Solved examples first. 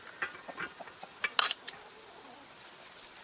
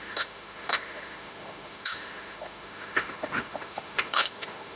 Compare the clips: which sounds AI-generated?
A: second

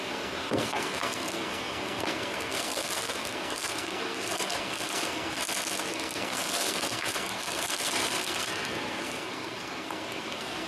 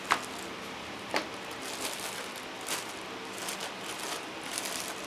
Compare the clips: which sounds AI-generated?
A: first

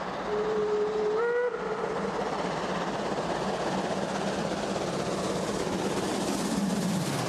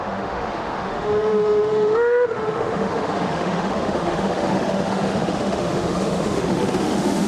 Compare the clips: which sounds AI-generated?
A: second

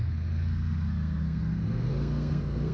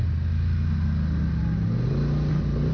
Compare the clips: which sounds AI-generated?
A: first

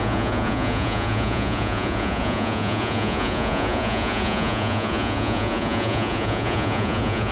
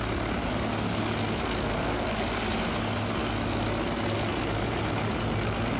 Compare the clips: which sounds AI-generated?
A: first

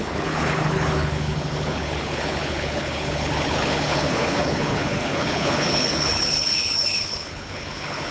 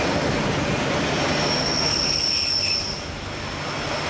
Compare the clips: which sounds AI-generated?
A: first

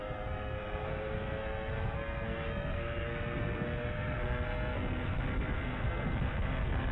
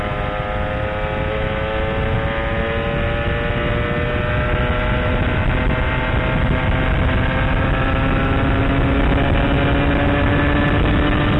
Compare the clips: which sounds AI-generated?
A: first